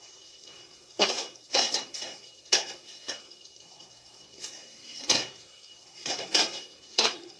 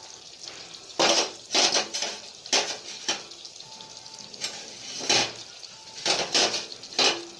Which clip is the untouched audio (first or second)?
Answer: second